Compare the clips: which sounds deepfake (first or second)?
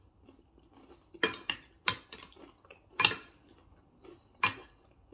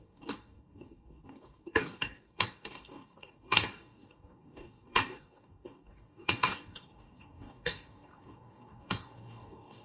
second